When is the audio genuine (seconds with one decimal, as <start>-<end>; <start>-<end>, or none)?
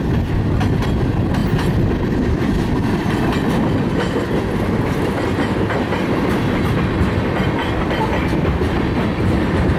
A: 0.0-9.8